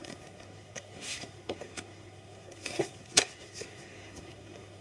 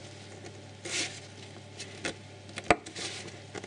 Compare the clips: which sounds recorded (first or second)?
second